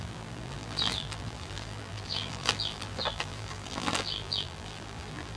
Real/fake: fake